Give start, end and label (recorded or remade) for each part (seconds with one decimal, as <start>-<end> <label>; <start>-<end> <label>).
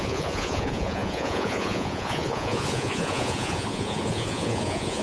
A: 0.0-5.0 remade